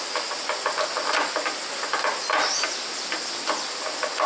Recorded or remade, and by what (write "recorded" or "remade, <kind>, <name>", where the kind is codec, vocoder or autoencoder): recorded